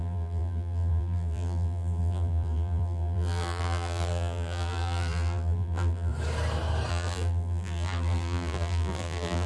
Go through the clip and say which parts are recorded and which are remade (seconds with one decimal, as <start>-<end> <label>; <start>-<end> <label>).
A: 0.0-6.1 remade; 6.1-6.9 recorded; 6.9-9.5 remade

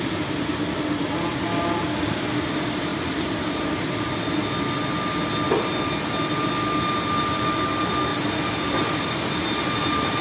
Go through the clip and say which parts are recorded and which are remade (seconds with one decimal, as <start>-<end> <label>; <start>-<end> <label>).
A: 0.0-2.9 recorded; 2.9-4.3 remade; 4.3-8.1 recorded; 8.1-9.3 remade; 9.3-10.2 recorded

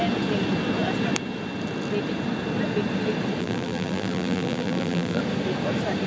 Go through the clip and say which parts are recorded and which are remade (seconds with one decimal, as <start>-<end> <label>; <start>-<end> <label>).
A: 0.0-3.4 recorded; 3.4-5.2 remade; 5.2-6.1 recorded